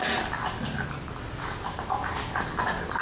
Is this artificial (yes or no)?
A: no